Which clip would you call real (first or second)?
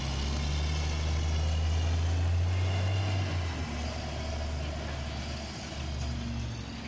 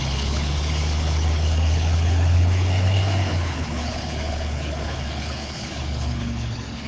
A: first